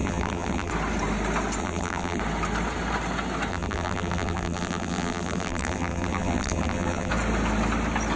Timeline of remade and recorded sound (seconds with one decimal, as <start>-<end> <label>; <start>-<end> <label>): 0.0-0.7 remade; 0.7-1.6 recorded; 1.6-2.2 remade; 2.2-3.5 recorded; 3.5-7.1 remade; 7.1-8.2 recorded